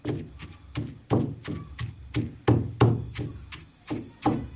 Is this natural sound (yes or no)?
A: yes